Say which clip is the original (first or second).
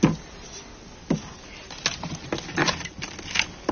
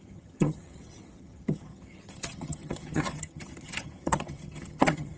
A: first